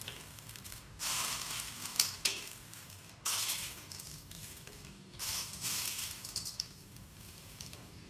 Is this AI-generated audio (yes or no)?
yes